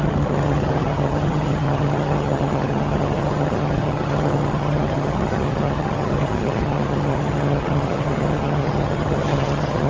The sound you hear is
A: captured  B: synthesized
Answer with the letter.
B